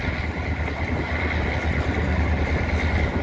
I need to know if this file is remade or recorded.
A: recorded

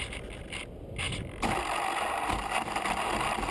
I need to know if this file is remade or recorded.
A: recorded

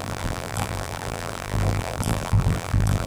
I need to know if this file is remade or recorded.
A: remade